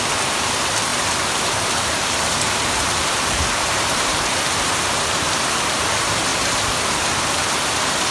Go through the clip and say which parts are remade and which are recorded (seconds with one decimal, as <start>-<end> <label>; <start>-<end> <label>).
0.0-0.9 recorded; 0.9-5.8 remade; 5.8-8.1 recorded